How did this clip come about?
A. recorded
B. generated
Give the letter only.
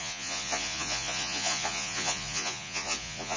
B